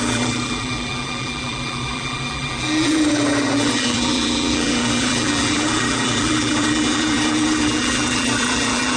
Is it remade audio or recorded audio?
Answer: remade